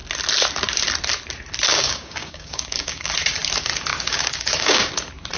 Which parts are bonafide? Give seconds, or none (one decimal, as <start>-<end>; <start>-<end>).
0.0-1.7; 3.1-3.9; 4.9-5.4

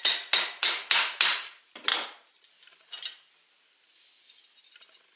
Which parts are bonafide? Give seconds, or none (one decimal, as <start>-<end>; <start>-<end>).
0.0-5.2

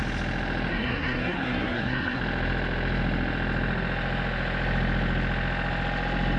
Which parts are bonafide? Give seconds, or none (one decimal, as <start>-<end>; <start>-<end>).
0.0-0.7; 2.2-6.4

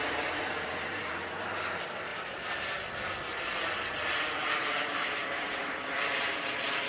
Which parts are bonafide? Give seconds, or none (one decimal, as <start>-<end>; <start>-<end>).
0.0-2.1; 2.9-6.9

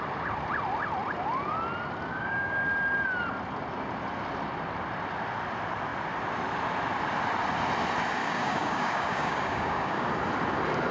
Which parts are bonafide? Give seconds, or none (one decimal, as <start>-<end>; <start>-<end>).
0.0-2.1; 2.6-8.2; 10.1-10.9